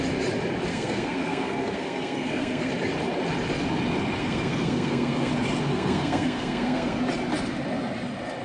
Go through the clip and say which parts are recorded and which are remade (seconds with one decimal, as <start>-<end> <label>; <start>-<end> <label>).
0.0-0.7 recorded; 0.7-2.7 remade; 2.7-4.2 recorded; 4.2-5.3 remade; 5.3-5.7 recorded; 5.7-7.0 remade; 7.0-8.4 recorded